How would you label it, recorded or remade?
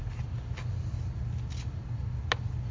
recorded